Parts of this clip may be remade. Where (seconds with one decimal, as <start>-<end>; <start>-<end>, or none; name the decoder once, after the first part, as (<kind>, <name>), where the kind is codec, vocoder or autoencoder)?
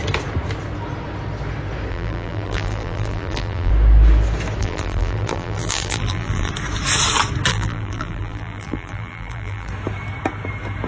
1.9-3.7 (vocoder, BigVGAN v2); 4.6-6.5; 7.5-9.7